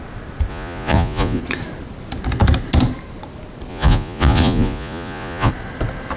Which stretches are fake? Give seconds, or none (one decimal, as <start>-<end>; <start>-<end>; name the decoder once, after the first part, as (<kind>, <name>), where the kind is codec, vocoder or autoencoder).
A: 0.5-1.4 (vocoder, Vocos); 3.7-5.5